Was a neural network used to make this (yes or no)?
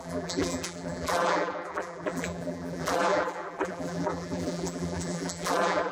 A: yes